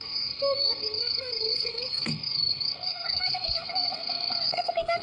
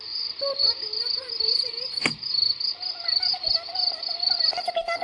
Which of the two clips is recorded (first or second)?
second